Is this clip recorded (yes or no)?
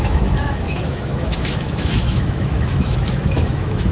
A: no